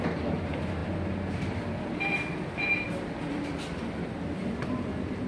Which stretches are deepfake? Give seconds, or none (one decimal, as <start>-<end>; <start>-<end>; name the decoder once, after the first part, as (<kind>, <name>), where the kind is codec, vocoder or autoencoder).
0.0-0.8 (vocoder, BigVGAN v2); 3.3-5.3